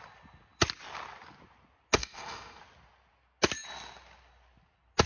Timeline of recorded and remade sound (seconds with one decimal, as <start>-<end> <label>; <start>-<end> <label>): 0.0-2.0 recorded; 2.0-2.6 remade; 2.6-5.1 recorded